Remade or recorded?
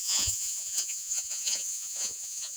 remade